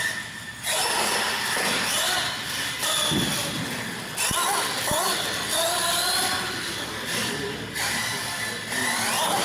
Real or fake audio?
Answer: real